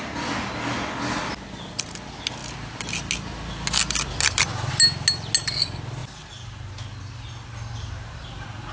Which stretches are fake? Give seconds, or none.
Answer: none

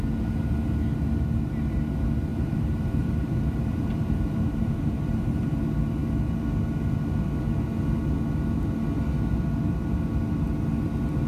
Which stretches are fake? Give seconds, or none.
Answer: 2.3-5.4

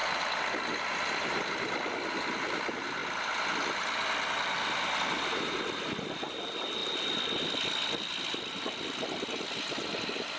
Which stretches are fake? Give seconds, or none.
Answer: 0.0-2.1; 6.8-9.7